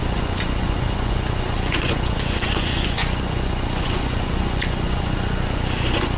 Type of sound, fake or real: fake